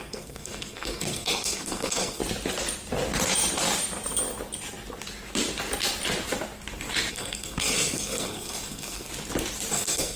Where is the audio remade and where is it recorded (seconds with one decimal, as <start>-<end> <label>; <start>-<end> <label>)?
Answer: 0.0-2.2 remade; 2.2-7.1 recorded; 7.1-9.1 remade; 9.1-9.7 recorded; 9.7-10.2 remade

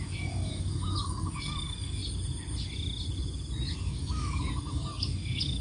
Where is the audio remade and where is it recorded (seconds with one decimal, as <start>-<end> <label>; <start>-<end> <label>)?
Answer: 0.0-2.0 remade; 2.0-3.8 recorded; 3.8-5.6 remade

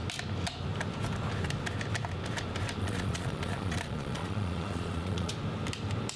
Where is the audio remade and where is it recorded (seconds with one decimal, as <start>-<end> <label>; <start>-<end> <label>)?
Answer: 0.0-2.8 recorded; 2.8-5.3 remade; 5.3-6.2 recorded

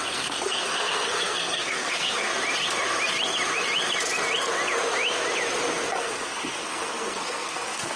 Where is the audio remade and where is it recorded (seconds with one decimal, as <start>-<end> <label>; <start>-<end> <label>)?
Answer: 0.0-2.3 remade; 2.3-5.9 recorded; 5.9-8.0 remade